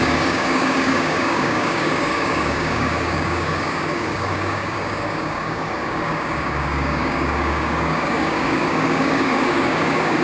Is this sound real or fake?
fake